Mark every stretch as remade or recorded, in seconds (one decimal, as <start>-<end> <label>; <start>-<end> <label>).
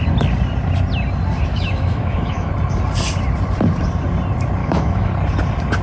0.0-1.5 recorded; 1.5-2.5 remade; 2.5-4.6 recorded; 4.6-5.1 remade; 5.1-5.8 recorded